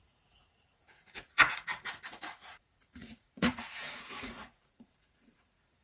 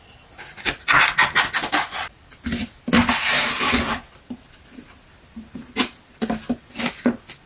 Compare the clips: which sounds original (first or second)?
second